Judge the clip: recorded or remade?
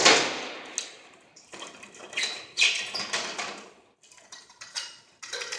recorded